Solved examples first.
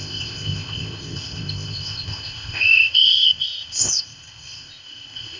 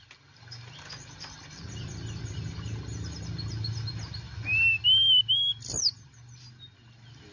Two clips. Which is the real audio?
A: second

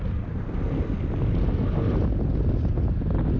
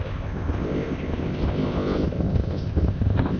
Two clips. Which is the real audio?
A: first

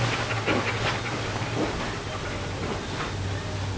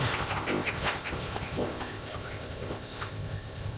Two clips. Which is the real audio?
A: first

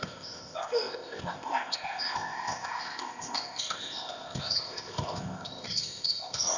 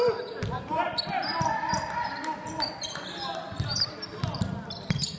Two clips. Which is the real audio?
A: second